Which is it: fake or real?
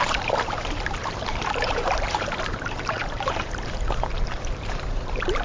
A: fake